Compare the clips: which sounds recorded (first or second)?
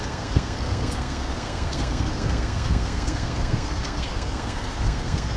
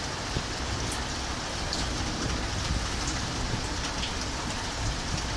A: second